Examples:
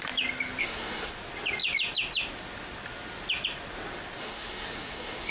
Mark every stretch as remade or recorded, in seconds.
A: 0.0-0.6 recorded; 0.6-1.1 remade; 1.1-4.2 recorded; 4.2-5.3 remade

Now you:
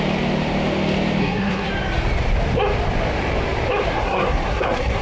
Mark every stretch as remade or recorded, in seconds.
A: 0.0-1.2 recorded; 1.2-1.7 remade; 1.7-3.9 recorded; 3.9-5.0 remade

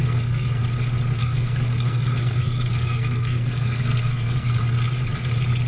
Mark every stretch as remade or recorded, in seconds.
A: 0.0-0.6 remade; 0.6-1.2 recorded; 1.2-4.6 remade; 4.6-5.7 recorded

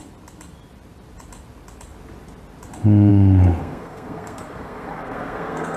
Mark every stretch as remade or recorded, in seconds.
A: 0.0-3.6 recorded; 3.6-5.8 remade

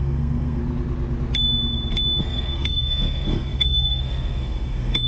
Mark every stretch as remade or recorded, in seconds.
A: 0.0-0.6 remade; 0.6-2.2 recorded; 2.2-5.1 remade

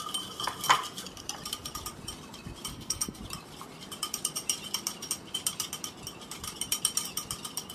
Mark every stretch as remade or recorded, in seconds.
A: 0.0-2.7 recorded; 2.7-3.2 remade; 3.2-7.7 recorded

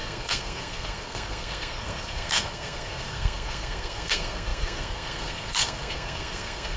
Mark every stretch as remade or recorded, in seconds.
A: 0.0-6.8 remade